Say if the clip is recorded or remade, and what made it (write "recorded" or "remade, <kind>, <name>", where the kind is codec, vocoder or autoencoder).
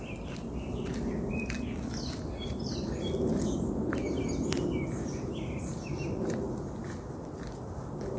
recorded